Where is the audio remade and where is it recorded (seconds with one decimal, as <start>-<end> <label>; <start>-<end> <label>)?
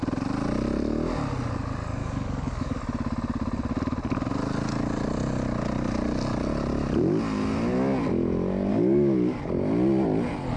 0.0-2.0 recorded; 2.0-2.8 remade; 2.8-8.7 recorded; 8.7-9.4 remade; 9.4-10.6 recorded